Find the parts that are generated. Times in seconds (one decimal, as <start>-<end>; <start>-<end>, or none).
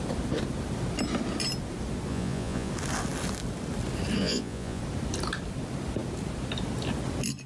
2.1-2.7; 4.2-4.8